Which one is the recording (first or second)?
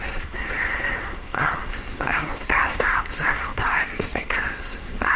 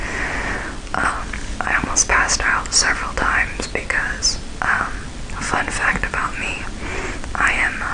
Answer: second